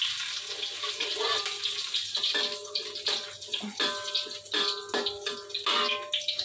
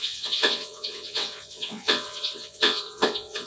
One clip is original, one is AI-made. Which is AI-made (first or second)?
second